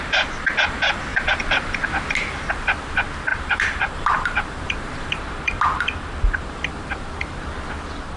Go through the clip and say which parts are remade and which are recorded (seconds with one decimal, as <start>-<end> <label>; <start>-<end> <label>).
0.0-1.1 recorded; 1.1-1.9 remade; 1.9-3.3 recorded; 3.3-7.5 remade; 7.5-8.2 recorded